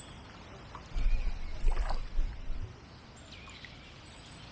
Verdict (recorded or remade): recorded